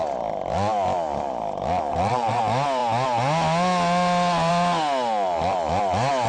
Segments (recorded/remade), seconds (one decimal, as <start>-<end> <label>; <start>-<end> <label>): 0.0-1.9 recorded; 1.9-2.4 remade; 2.4-6.3 recorded